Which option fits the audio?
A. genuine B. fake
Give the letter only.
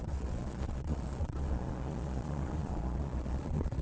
B